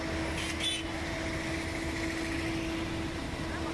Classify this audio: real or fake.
real